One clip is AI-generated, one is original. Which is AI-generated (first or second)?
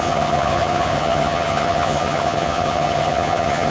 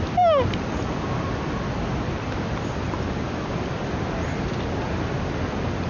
first